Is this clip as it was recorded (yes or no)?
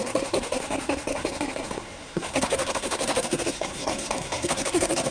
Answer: no